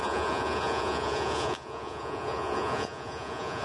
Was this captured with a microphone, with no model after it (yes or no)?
no